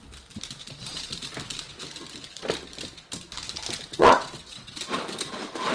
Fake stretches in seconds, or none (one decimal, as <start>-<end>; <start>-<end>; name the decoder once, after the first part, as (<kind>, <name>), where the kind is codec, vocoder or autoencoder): 3.9-4.8 (vocoder, WaveNeXt)